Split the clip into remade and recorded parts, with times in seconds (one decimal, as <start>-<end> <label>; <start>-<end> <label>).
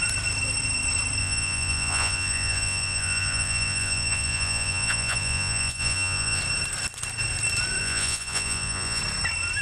0.0-1.2 recorded; 1.2-6.4 remade; 6.4-7.8 recorded; 7.8-9.0 remade; 9.0-9.6 recorded